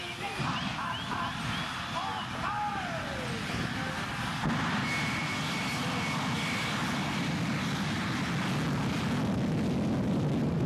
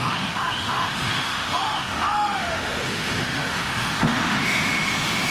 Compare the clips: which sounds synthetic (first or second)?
second